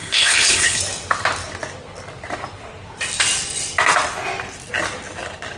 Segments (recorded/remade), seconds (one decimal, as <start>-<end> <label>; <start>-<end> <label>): 0.0-0.8 remade; 0.8-5.6 recorded